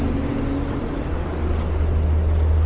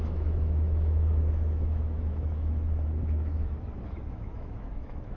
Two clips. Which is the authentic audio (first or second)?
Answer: first